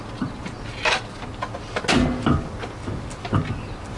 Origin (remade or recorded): recorded